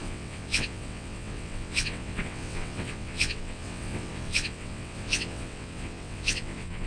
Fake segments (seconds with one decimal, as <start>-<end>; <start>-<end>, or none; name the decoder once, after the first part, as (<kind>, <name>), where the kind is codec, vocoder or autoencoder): 0.0-6.9 (vocoder, WaveNeXt)